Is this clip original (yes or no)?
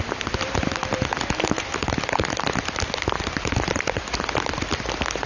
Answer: yes